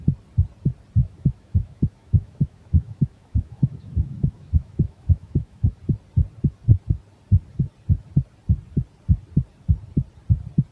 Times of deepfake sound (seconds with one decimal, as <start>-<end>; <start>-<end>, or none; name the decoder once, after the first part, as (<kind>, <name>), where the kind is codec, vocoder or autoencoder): 1.0-5.8 (autoencoder, DAC-VAE)